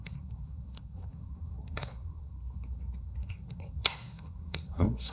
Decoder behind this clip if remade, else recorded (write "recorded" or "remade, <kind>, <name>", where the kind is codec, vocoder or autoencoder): remade, codec, SNAC